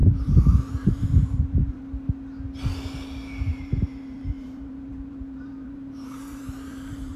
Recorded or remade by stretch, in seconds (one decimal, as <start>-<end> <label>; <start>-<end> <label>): 0.0-1.8 remade; 1.8-3.5 recorded; 3.5-7.2 remade